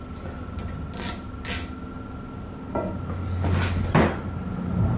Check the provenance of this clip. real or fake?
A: real